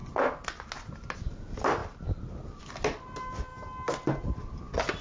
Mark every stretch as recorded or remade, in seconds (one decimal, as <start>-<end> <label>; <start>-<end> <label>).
0.0-5.0 recorded